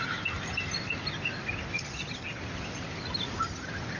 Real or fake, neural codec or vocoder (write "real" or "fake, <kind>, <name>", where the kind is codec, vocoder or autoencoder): real